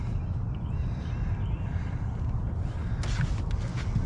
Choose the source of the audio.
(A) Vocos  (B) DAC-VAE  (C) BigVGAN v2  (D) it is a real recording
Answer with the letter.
D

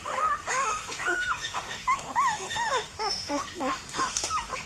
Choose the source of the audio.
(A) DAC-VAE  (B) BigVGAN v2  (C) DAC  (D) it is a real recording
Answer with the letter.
A